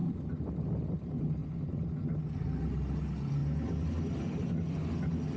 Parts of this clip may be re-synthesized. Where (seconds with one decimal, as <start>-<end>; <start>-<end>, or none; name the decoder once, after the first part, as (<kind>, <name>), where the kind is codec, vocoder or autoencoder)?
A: none